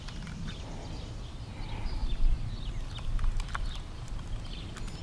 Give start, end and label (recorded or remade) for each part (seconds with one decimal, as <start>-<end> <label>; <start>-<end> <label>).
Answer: 0.0-2.0 remade; 2.0-3.3 recorded; 3.3-5.0 remade